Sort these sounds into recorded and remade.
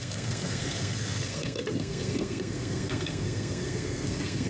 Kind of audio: remade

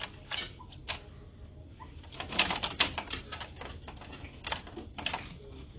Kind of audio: recorded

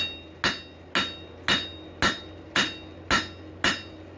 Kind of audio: recorded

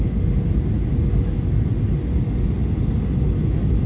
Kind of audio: recorded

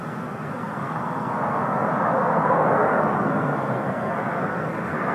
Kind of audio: remade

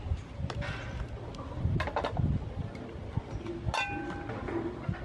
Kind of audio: recorded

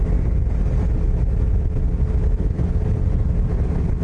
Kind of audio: recorded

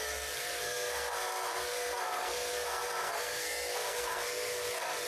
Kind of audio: remade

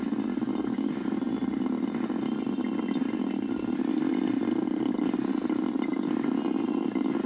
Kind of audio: recorded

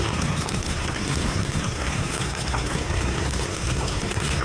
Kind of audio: remade